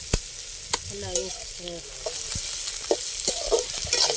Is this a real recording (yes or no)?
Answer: yes